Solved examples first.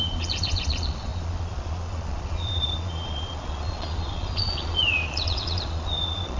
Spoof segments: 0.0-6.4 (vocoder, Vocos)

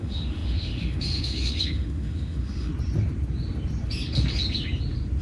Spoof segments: 0.0-2.7 (autoencoder, DAC-VAE)

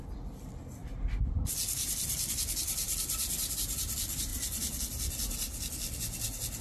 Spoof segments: none

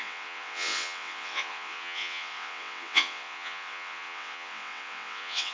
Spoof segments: 0.0-5.5 (vocoder, WaveNeXt)

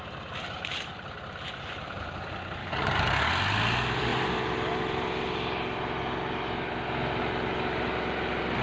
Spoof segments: 2.6-3.3 (codec, DAC)